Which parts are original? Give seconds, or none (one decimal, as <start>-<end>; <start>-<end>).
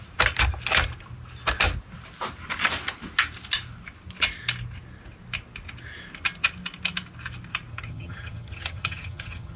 0.0-7.7